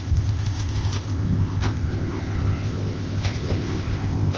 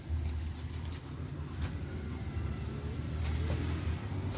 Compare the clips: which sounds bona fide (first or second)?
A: second